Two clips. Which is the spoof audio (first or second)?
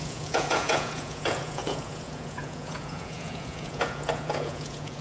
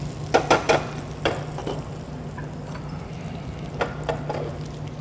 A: first